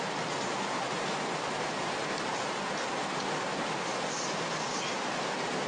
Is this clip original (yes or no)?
yes